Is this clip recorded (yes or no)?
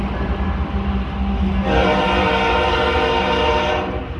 yes